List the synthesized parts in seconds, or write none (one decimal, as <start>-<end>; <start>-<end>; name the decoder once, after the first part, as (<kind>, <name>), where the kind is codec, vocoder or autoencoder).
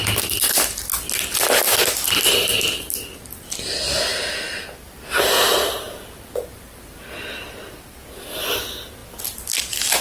none